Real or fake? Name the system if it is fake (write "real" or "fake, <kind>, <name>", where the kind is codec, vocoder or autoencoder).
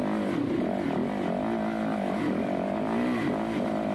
real